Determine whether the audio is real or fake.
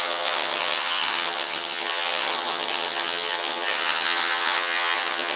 fake